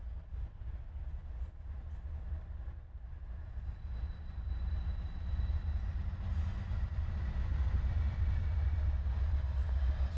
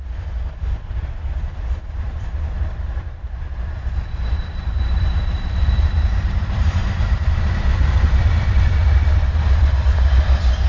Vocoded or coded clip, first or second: second